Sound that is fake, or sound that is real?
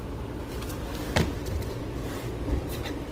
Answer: real